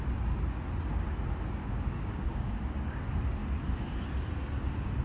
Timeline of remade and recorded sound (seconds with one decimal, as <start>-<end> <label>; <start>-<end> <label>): 0.0-1.6 recorded; 1.6-3.0 remade; 3.0-5.0 recorded